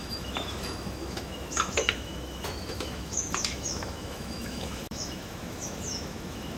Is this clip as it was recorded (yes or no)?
no